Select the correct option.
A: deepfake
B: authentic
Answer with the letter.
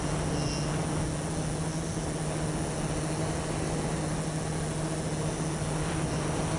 B